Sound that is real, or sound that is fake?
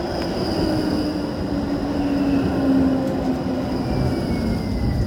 real